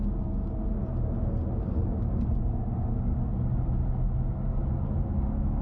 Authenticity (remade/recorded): recorded